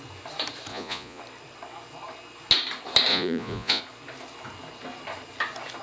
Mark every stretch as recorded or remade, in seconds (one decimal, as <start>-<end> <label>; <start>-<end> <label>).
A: 0.0-0.7 recorded; 0.7-1.2 remade; 1.2-3.1 recorded; 3.1-3.8 remade; 3.8-5.8 recorded